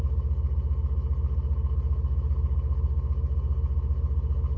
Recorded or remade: recorded